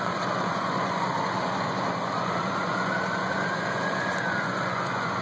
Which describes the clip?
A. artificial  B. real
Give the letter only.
A